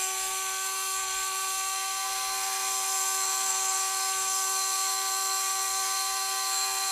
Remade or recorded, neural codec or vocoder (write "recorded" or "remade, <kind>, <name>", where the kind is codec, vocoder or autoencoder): remade, codec, SNAC